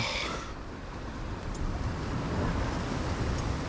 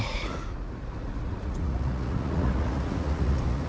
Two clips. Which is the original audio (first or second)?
first